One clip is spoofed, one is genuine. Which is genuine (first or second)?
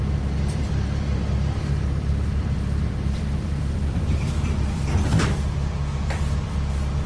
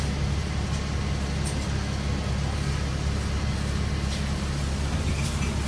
second